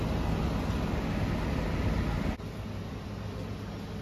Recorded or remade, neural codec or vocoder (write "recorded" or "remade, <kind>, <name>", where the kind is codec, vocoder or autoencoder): recorded